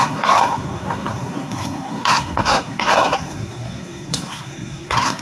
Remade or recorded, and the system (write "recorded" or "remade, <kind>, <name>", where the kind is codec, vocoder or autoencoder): remade, codec, SNAC